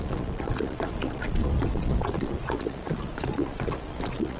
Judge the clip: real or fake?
fake